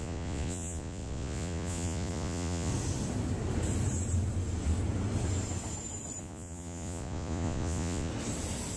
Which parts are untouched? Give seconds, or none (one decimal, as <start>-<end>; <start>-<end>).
2.7-6.2; 8.1-8.8

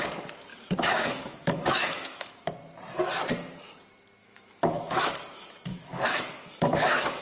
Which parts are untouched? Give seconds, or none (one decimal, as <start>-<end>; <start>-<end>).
0.0-0.5; 2.5-4.2; 5.1-5.7

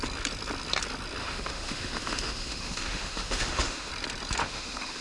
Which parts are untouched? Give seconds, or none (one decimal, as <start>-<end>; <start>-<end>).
0.0-1.2; 3.9-4.4

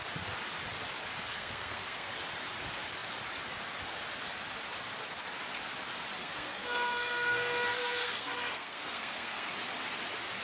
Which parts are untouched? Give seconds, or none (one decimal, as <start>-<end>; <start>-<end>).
0.0-1.3; 2.1-6.2; 9.5-10.4

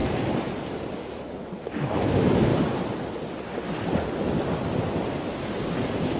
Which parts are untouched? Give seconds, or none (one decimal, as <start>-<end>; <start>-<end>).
0.0-0.9; 2.5-6.2

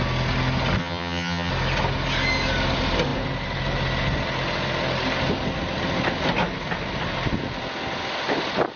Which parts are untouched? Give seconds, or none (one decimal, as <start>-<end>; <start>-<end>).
0.0-0.8; 1.5-8.8